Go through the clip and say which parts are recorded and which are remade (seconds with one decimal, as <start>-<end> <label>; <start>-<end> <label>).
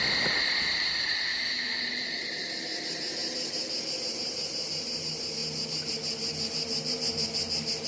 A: 0.0-1.3 recorded; 1.3-1.8 remade; 1.8-7.9 recorded